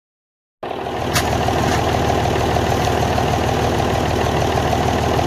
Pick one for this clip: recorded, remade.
recorded